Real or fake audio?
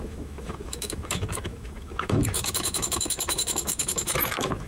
fake